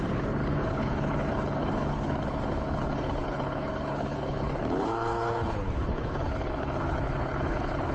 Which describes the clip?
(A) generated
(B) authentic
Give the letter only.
A